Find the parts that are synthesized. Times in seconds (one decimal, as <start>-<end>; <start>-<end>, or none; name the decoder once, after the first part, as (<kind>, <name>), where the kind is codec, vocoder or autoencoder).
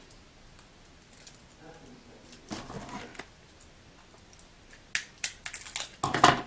none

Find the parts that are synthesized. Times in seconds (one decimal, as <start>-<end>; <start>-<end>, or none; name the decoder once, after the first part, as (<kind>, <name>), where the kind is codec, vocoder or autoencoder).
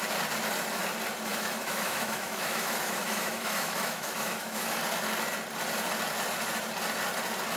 1.3-4.8 (autoencoder, DAC-VAE)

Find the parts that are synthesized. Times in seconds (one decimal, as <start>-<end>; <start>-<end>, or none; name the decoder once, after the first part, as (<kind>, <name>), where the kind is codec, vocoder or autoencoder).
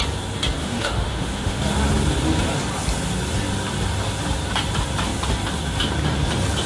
0.6-1.6 (autoencoder, DAC-VAE)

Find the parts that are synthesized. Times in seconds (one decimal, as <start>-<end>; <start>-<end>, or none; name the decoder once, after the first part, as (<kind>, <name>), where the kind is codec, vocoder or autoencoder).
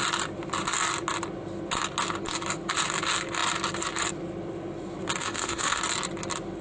5.2-5.8 (autoencoder, DAC-VAE)